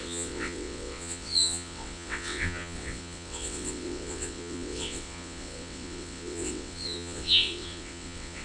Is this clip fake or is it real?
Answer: fake